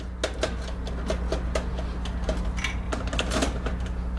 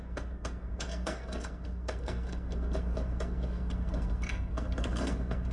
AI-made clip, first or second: second